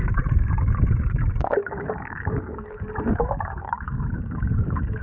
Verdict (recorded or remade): remade